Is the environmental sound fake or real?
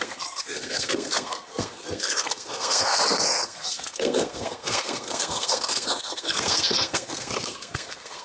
fake